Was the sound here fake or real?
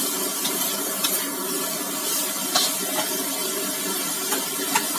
real